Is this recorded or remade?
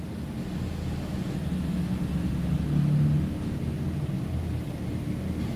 recorded